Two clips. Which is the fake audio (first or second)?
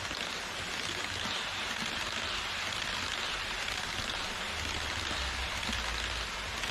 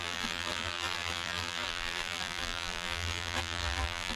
second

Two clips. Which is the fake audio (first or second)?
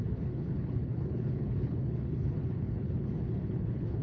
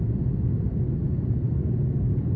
first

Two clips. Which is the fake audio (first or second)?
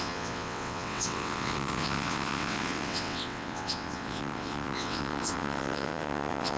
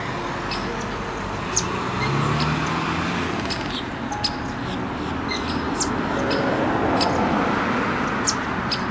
first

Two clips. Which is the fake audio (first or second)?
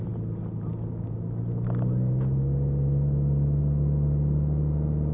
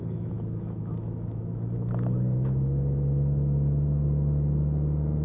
second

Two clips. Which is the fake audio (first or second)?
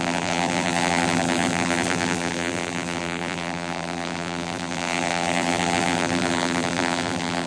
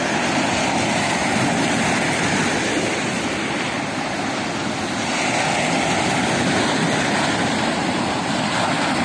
first